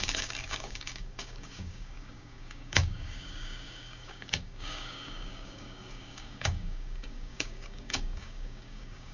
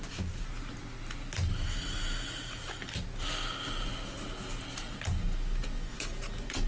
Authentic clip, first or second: second